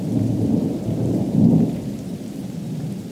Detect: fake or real fake